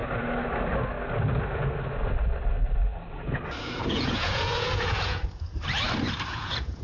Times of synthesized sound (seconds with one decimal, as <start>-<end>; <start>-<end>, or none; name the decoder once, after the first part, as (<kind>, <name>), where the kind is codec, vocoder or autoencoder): 3.6-5.5 (vocoder, Vocos); 6.2-6.8